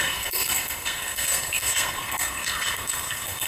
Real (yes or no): no